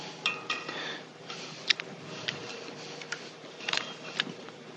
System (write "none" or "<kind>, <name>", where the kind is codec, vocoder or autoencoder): vocoder, BigVGAN v2